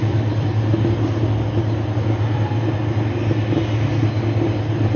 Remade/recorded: recorded